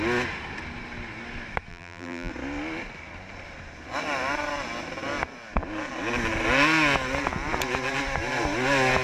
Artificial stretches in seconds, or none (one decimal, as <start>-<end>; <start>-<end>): 1.7-2.3